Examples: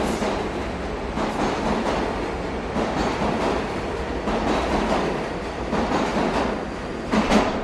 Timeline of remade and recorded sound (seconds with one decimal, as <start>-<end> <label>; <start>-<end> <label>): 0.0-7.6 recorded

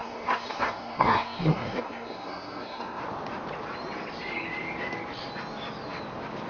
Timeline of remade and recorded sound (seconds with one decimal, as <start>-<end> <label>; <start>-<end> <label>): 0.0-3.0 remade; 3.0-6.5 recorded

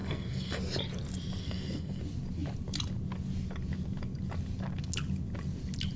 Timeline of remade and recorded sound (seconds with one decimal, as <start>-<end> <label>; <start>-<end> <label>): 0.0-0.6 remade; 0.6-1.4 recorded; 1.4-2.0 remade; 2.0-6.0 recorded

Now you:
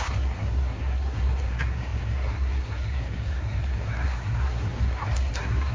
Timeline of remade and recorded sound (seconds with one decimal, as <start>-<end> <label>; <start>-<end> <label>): 0.0-5.7 remade